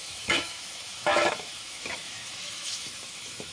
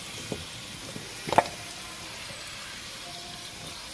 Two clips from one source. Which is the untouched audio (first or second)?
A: second